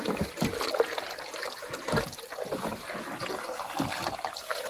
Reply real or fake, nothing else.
real